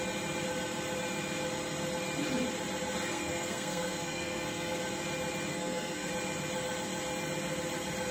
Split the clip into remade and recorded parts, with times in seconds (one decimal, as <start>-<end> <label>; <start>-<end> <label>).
0.0-3.1 recorded; 3.1-4.8 remade; 4.8-5.5 recorded; 5.5-6.1 remade; 6.1-8.1 recorded